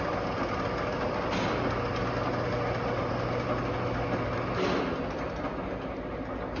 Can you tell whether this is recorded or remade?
recorded